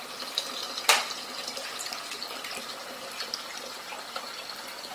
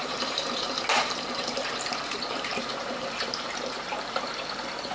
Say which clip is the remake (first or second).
second